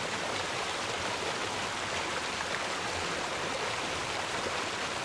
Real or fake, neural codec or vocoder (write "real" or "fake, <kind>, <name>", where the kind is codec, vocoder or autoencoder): real